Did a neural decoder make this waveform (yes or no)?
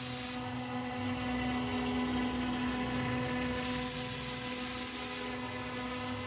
no